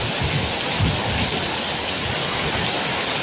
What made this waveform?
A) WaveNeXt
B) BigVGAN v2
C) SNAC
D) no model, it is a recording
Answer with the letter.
D